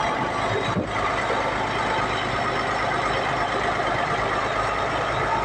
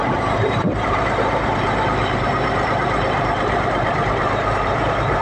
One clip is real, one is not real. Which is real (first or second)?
first